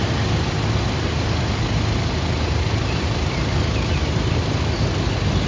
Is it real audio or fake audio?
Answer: real